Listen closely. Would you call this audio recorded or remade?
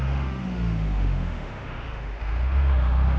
remade